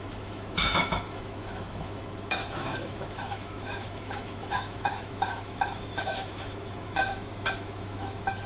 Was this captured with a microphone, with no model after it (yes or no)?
no